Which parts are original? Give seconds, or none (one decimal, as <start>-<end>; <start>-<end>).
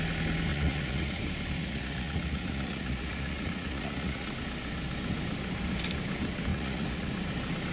0.0-0.5; 1.2-1.6; 4.3-6.5; 7.1-7.7